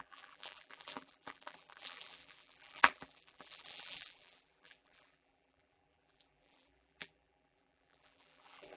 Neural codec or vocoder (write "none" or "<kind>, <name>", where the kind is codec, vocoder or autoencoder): vocoder, BigVGAN v2